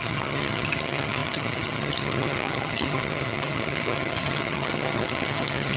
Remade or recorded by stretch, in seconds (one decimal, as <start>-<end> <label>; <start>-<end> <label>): 0.0-5.8 remade